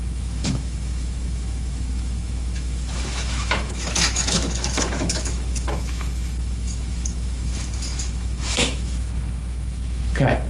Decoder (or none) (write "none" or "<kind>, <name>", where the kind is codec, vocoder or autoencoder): autoencoder, DAC-VAE